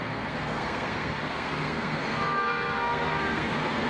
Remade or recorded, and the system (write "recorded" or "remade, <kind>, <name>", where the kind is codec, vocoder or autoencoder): remade, codec, SNAC